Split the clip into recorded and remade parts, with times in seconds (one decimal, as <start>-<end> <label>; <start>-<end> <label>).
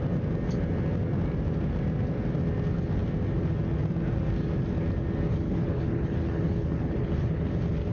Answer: 0.0-5.3 recorded; 5.3-7.5 remade; 7.5-7.9 recorded